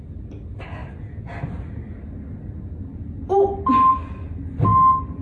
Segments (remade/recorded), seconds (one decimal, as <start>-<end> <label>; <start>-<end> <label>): 0.0-5.2 recorded